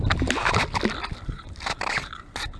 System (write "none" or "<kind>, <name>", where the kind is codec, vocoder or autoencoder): none